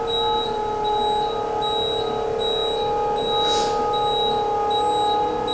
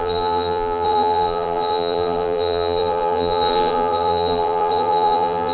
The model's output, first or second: second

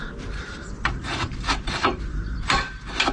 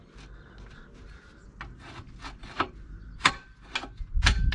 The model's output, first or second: first